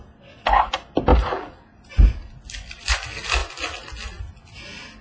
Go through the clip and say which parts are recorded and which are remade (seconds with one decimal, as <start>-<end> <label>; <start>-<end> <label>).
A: 0.0-5.0 recorded